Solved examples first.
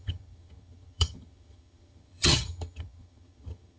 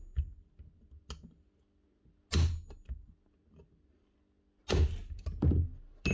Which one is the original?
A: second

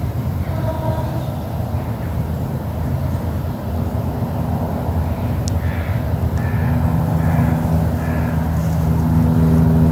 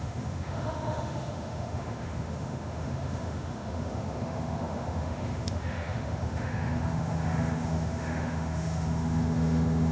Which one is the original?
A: first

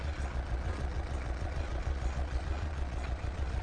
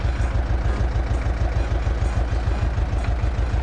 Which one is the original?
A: second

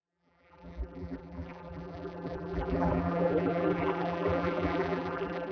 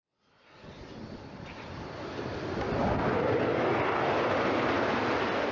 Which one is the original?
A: second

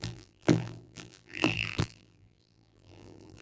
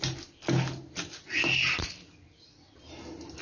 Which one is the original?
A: second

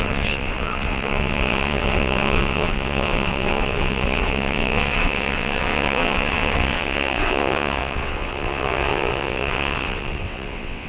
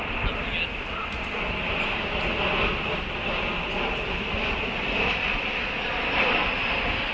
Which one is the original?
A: second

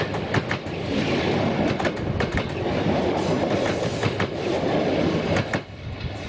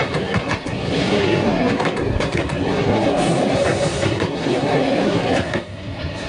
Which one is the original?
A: first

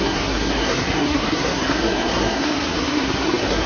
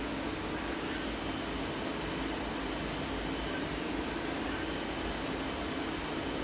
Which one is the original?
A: second